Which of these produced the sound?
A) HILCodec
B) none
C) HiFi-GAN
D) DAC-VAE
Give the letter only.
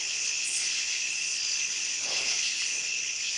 A